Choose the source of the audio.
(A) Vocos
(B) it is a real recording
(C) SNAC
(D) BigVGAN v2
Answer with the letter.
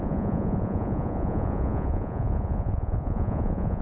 A